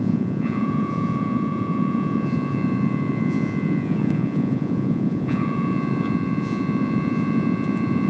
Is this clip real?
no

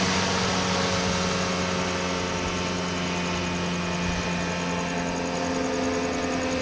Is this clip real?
yes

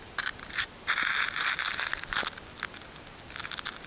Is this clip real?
yes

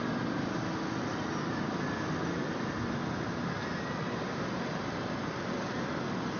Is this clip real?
yes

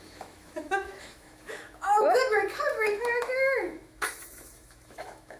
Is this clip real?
no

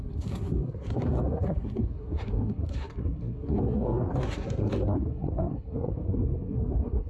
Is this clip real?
no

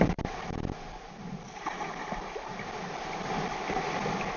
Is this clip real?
yes